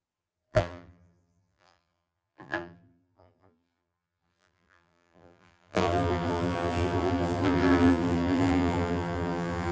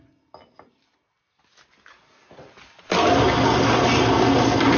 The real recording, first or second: second